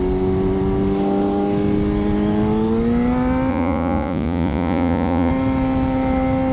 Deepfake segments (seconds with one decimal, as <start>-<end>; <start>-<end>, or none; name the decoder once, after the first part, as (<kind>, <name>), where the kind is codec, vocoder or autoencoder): 3.5-5.3 (vocoder, Vocos)